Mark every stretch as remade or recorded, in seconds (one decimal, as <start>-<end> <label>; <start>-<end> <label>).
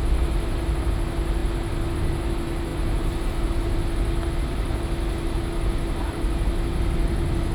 0.0-7.5 recorded